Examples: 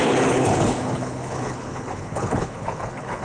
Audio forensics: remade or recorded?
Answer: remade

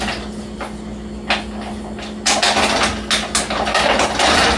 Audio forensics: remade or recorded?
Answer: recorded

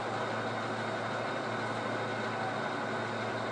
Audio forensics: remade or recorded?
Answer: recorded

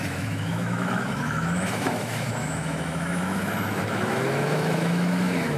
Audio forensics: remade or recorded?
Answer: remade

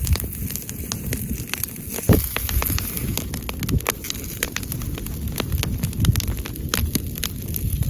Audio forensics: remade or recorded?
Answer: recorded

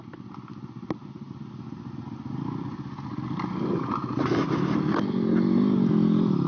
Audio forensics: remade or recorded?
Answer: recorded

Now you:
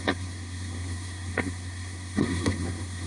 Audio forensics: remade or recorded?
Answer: remade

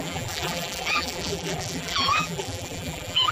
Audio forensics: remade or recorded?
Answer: remade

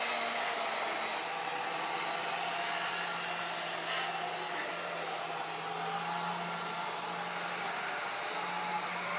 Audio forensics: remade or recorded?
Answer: recorded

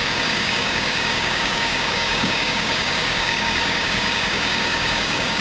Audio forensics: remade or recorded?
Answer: remade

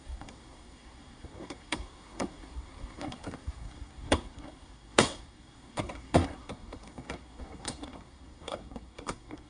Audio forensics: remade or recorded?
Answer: remade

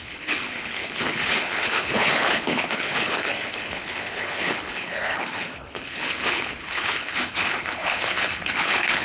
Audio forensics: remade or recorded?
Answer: remade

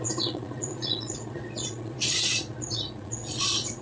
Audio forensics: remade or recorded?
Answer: remade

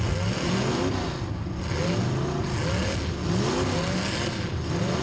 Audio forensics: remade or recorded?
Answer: recorded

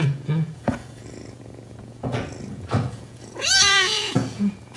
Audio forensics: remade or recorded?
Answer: remade